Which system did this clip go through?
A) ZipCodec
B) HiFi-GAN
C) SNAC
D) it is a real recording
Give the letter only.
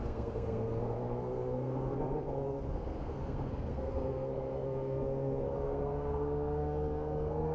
C